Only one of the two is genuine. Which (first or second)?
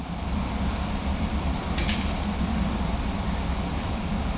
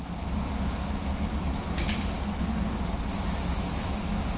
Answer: second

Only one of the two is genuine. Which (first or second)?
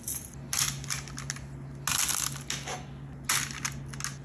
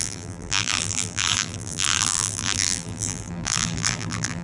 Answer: first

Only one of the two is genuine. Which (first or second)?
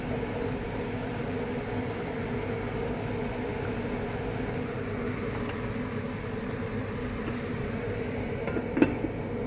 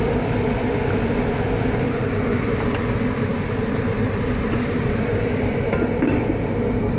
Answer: first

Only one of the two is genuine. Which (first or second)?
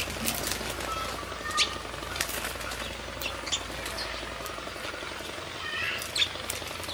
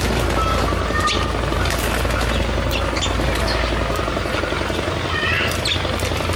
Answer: first